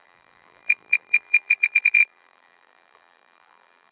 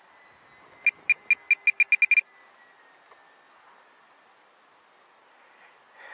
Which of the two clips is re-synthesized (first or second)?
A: first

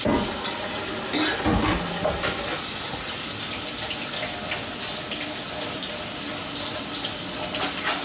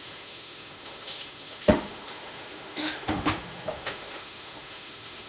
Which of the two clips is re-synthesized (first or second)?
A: second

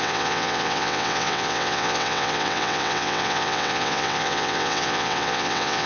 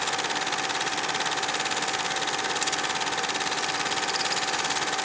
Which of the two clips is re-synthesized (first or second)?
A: first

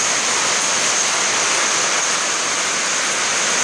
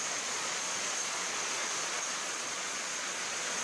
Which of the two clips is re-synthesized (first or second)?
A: second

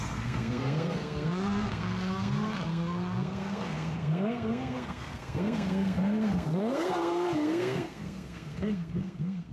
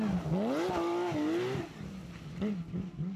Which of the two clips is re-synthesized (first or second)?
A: first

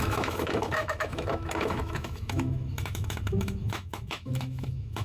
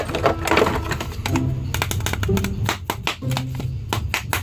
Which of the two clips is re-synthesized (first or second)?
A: first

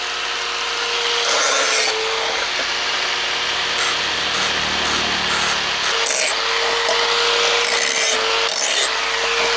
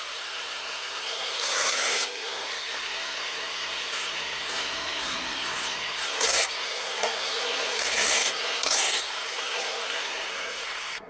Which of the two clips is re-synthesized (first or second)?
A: second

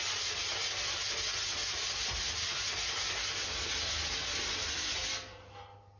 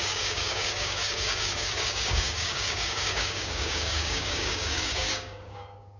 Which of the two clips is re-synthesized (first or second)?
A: second